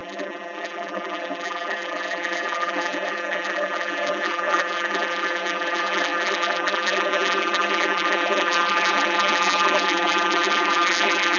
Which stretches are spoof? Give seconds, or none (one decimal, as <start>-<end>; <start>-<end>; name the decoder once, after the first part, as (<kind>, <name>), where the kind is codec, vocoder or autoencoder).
0.0-11.4 (vocoder, BigVGAN v2)